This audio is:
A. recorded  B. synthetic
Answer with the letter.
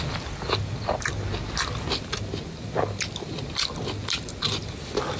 A